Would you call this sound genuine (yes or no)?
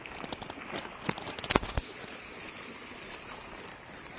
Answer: yes